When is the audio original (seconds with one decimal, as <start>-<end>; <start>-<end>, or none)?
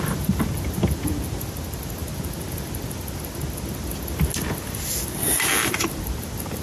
0.0-6.6